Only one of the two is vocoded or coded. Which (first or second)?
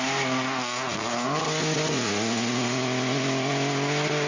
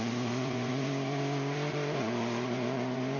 second